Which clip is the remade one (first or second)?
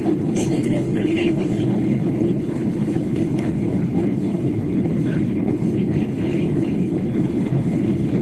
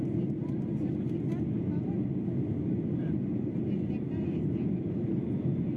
first